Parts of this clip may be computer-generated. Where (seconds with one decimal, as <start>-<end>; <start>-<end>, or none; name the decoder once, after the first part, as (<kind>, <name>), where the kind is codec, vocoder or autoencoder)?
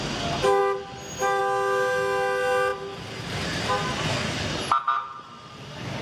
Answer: none